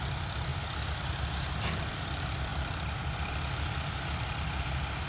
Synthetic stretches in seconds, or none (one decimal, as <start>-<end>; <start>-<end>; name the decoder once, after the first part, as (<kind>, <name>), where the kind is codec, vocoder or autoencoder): 0.0-0.5 (vocoder, BigVGAN v2); 2.0-5.1